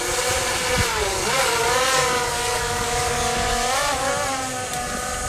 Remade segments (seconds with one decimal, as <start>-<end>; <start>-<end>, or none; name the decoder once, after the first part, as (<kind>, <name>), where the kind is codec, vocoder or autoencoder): 0.9-4.1 (codec, DAC)